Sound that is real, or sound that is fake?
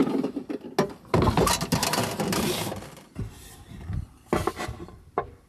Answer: real